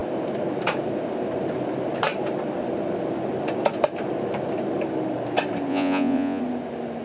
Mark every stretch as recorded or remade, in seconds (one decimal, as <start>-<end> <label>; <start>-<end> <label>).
0.0-5.7 recorded; 5.7-6.4 remade; 6.4-7.0 recorded